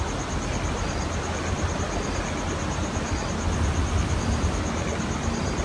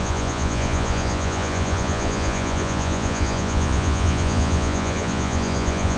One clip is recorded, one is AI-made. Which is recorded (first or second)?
first